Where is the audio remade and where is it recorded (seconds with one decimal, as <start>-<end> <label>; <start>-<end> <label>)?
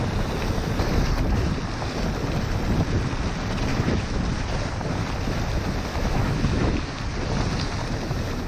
0.0-3.7 recorded; 3.7-4.2 remade; 4.2-5.9 recorded; 5.9-6.8 remade; 6.8-8.5 recorded